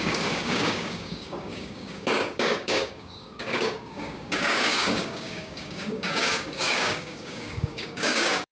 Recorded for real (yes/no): no